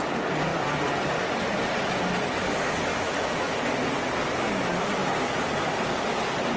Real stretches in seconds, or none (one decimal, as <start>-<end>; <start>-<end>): 0.0-2.9; 3.5-6.6